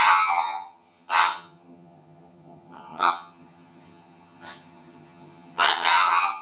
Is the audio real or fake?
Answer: fake